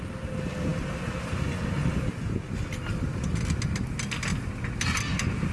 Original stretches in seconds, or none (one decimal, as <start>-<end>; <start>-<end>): 0.0-5.5